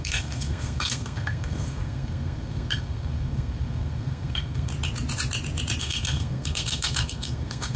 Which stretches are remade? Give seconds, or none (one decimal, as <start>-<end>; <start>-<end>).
0.0-4.7; 5.8-7.8